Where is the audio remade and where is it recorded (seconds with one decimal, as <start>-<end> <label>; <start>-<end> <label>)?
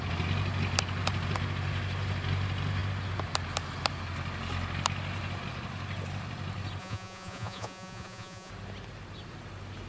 0.0-6.8 recorded; 6.8-8.5 remade; 8.5-9.9 recorded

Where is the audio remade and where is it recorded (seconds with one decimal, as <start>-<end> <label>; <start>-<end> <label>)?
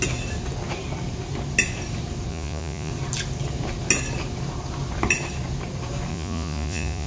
0.0-2.3 recorded; 2.3-2.9 remade; 2.9-6.1 recorded; 6.1-7.1 remade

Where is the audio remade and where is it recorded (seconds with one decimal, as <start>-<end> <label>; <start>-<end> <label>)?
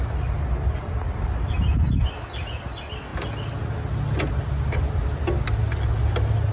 0.0-6.5 recorded